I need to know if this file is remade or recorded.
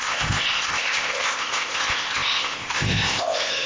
remade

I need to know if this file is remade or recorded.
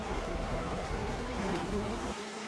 remade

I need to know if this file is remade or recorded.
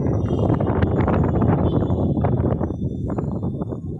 remade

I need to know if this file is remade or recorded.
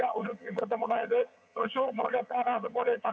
remade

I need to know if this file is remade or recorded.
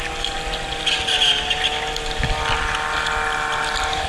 recorded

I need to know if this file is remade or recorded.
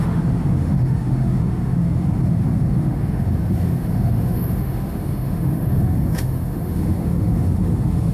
remade